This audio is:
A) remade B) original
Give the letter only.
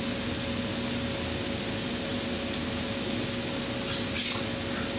B